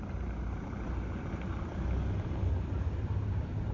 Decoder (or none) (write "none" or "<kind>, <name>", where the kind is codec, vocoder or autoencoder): none